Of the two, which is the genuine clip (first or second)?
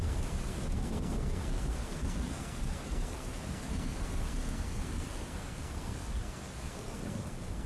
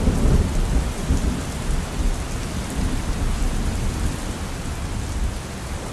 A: second